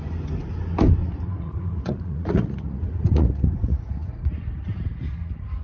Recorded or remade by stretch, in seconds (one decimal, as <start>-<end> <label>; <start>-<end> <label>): 0.0-1.0 recorded; 1.0-4.4 remade; 4.4-5.6 recorded